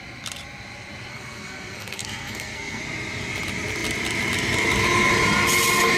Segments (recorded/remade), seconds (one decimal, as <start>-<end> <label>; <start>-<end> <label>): 0.0-1.1 recorded; 1.1-2.8 remade; 2.8-6.0 recorded